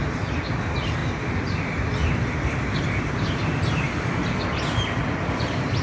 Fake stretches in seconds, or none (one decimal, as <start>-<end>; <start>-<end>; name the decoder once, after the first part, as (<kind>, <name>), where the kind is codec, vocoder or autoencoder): none